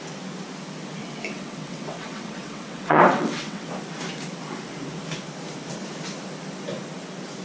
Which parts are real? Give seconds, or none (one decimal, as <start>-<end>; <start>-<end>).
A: 0.0-1.0; 3.7-7.4